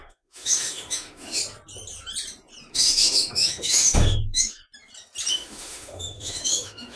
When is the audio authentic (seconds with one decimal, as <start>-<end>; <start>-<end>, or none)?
1.4-2.7; 4.6-5.3